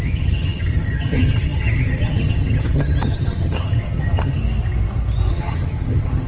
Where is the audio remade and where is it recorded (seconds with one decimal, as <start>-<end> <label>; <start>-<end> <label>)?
0.0-4.4 remade; 4.4-5.3 recorded; 5.3-6.3 remade